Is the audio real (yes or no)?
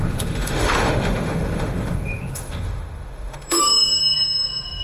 no